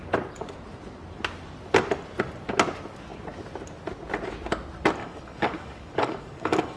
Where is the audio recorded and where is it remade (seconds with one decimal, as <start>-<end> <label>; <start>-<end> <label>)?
0.0-5.0 recorded; 5.0-6.8 remade